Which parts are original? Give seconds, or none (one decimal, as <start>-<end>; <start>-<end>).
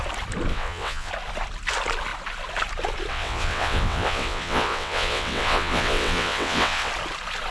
0.0-0.5; 1.1-3.1; 6.9-7.5